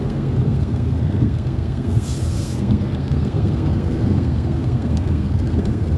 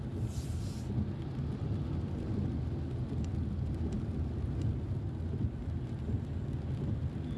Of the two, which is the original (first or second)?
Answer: second